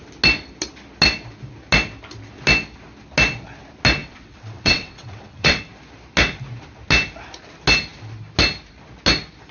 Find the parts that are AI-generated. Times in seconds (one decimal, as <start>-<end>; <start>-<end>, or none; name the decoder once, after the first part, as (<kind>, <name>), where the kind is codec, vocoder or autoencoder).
4.0-5.6 (vocoder, WaveNeXt)